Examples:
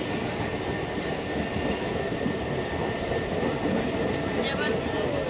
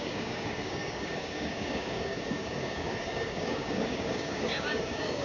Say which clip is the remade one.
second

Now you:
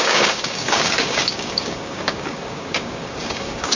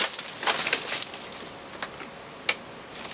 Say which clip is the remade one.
first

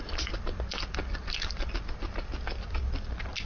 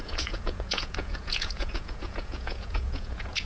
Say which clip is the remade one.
second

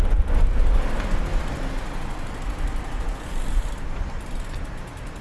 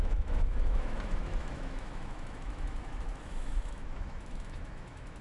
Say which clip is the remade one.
second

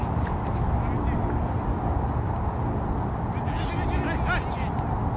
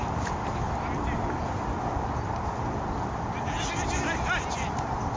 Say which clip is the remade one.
second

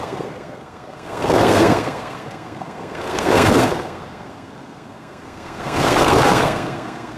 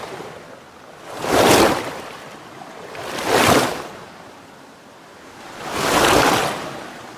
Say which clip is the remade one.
first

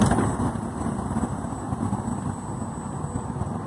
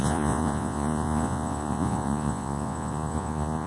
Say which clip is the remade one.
second